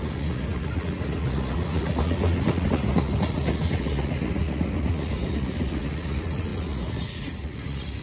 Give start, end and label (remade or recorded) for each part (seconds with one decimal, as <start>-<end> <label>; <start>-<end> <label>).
0.0-8.0 remade